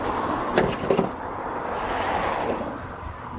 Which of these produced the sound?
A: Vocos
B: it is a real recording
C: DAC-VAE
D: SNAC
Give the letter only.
B